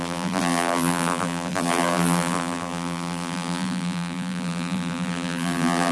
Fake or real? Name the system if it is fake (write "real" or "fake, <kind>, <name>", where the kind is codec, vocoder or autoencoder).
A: fake, vocoder, BigVGAN v2